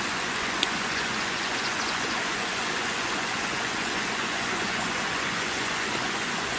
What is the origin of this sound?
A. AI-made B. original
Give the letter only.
A